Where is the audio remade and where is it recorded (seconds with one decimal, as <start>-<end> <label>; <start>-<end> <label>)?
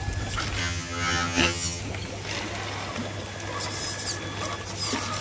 0.0-0.6 recorded; 0.6-1.8 remade; 1.8-5.2 recorded